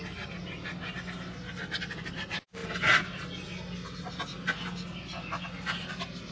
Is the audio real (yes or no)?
yes